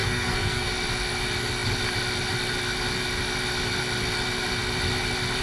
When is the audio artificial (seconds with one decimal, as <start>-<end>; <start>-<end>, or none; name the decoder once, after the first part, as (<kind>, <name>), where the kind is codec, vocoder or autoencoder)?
0.0-0.7 (codec, SNAC)